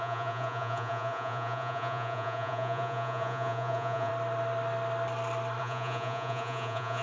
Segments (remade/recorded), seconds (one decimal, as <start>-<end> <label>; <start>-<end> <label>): 0.0-4.1 remade; 4.1-5.6 recorded; 5.6-7.0 remade